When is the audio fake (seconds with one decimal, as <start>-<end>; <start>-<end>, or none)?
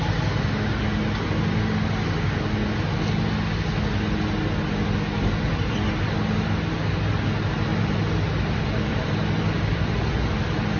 7.7-10.8